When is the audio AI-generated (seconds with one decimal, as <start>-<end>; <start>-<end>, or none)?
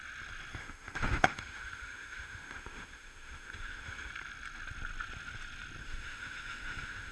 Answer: 0.6-4.1; 5.8-7.1